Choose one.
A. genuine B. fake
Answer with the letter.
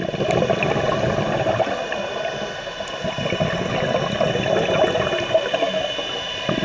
A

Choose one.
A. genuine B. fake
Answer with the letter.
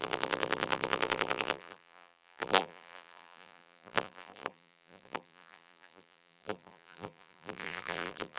B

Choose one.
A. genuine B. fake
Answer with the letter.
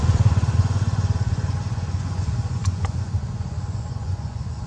B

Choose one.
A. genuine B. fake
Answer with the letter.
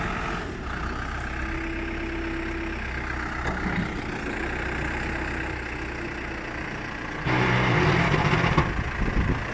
A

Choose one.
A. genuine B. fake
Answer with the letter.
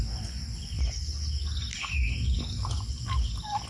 A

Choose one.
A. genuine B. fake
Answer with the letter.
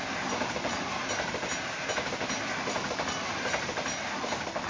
A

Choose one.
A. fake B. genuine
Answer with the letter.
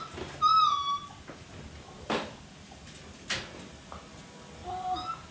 B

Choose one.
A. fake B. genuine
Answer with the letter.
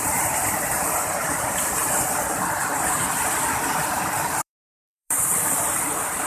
A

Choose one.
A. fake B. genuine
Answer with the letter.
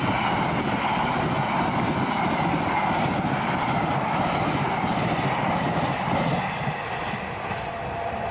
B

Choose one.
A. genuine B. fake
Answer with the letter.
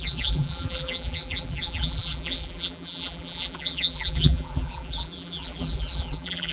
B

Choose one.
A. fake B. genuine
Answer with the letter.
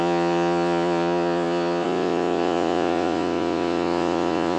A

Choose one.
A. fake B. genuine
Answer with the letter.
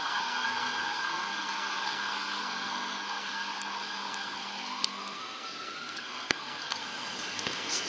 A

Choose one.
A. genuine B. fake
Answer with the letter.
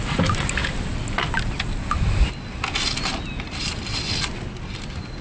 A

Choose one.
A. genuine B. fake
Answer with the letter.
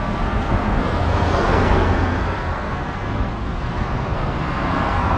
B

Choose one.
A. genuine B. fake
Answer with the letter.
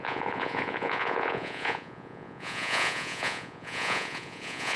B